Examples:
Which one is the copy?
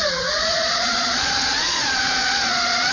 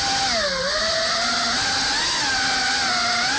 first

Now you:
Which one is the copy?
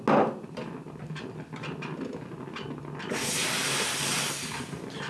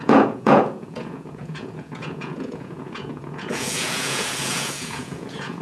second